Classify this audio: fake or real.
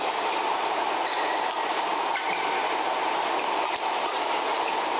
real